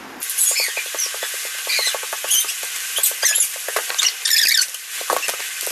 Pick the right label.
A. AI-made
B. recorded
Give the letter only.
B